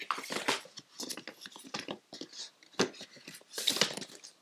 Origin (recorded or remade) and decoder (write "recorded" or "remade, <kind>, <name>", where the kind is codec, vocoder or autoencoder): recorded